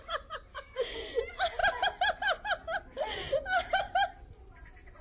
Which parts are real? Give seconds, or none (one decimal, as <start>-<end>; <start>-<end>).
0.0-0.5; 1.0-5.0